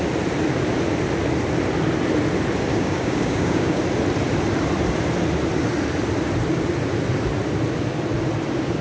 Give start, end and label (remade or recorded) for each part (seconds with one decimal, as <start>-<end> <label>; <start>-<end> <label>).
0.0-2.7 recorded; 2.7-3.8 remade; 3.8-8.8 recorded